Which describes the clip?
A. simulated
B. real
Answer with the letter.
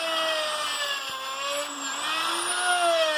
B